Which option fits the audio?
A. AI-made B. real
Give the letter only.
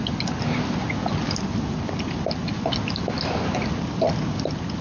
B